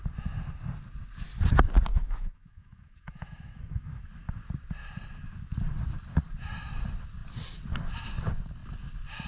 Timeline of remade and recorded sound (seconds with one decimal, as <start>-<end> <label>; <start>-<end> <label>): 0.0-1.9 recorded; 1.9-4.0 remade; 4.0-9.3 recorded